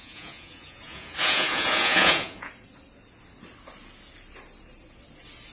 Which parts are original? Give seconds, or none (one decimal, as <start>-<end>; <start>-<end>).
2.5-5.5